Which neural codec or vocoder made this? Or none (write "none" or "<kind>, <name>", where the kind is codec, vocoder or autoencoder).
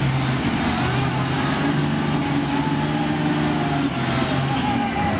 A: none